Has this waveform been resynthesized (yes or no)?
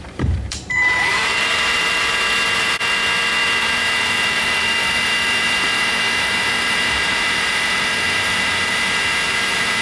yes